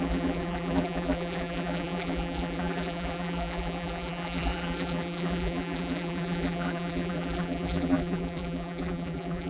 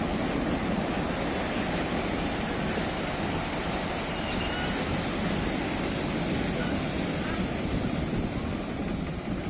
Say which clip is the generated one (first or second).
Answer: first